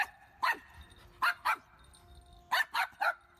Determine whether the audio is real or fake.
real